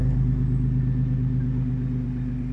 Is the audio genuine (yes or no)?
yes